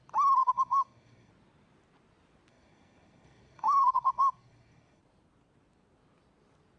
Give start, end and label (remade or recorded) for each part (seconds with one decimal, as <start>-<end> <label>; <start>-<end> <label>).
0.0-0.4 recorded; 0.4-1.3 remade; 1.3-2.5 recorded; 2.5-5.0 remade; 5.0-6.8 recorded